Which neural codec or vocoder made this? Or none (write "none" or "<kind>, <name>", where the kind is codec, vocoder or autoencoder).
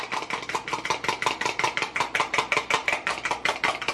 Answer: none